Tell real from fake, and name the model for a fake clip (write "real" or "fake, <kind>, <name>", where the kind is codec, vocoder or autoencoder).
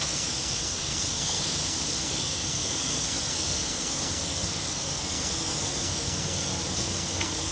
fake, codec, SNAC